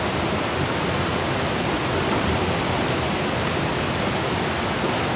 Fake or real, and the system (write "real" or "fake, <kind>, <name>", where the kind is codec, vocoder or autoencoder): real